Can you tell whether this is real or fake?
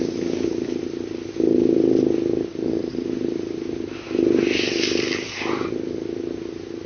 real